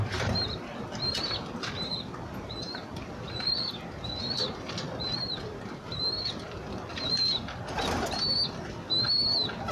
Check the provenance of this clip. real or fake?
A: real